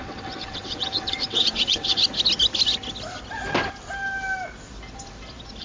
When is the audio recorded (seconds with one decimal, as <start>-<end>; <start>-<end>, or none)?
2.0-5.6